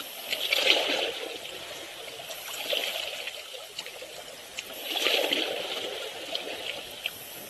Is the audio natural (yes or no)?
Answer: yes